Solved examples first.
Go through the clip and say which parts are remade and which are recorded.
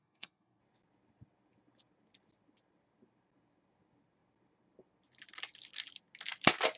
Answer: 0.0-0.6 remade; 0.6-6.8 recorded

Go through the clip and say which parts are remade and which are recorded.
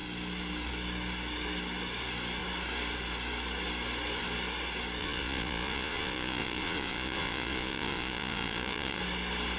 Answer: 0.0-5.0 recorded; 5.0-9.0 remade; 9.0-9.6 recorded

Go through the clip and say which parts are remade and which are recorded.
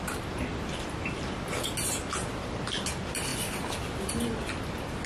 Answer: 0.0-3.3 remade; 3.3-4.0 recorded; 4.0-5.1 remade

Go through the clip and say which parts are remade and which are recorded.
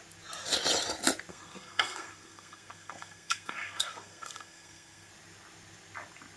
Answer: 0.0-1.3 recorded; 1.3-5.1 remade; 5.1-6.4 recorded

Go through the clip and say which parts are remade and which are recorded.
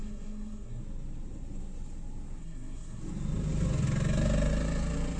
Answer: 0.0-0.8 remade; 0.8-2.4 recorded; 2.4-3.0 remade; 3.0-5.2 recorded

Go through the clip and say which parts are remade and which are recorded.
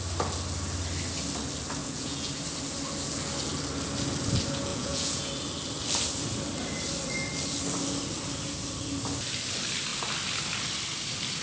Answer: 0.0-1.8 recorded; 1.8-2.3 remade; 2.3-4.7 recorded; 4.7-5.3 remade; 5.3-11.4 recorded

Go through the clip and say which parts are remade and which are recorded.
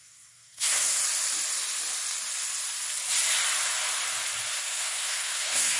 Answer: 0.0-1.0 remade; 1.0-4.5 recorded; 4.5-5.8 remade